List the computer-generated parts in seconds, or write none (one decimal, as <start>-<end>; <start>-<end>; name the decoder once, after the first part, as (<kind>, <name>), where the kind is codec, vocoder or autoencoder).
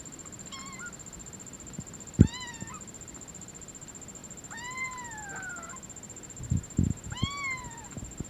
none